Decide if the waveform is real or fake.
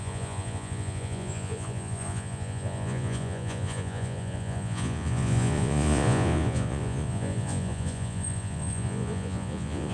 fake